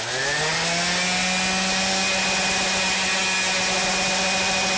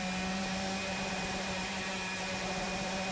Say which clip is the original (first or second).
first